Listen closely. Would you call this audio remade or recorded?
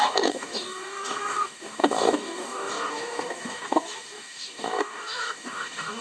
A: remade